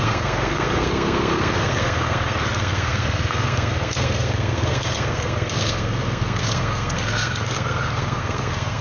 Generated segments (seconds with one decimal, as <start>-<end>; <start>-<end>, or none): 0.0-8.8